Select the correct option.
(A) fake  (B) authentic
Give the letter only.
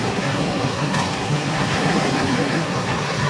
A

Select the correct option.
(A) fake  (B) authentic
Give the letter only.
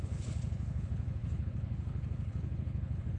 A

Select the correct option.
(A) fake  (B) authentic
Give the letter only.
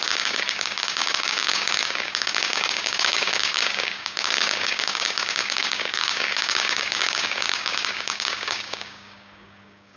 A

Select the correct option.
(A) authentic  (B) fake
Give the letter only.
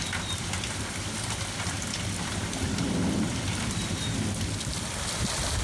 A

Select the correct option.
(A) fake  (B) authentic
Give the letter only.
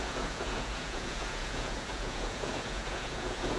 A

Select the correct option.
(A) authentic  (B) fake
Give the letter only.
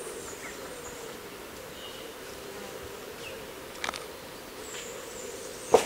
A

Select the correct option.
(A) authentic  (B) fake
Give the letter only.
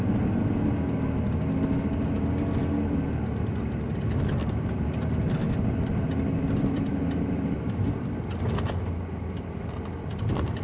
A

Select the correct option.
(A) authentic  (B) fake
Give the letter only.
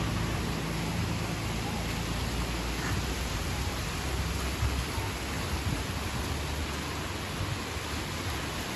A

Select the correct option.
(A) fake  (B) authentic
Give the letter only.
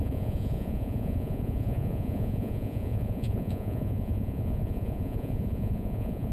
A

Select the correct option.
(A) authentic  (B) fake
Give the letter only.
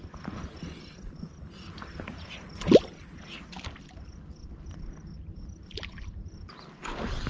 A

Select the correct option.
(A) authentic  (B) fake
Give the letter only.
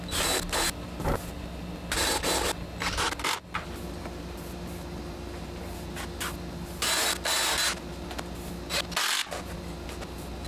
A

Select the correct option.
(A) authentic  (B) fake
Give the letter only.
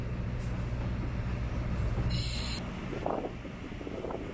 A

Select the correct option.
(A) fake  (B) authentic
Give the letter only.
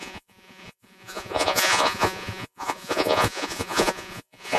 A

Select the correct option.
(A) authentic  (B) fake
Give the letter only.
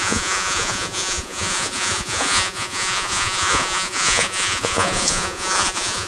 B